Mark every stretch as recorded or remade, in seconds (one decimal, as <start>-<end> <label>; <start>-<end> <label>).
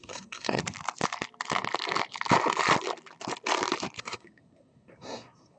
0.0-0.6 remade; 0.6-4.0 recorded; 4.0-5.6 remade